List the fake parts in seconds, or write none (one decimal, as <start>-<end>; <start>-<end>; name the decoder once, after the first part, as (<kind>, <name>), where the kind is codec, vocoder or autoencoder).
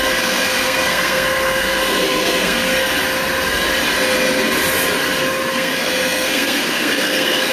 0.0-2.9 (codec, SNAC); 5.5-7.5